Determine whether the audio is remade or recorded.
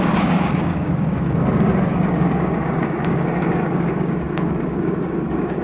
remade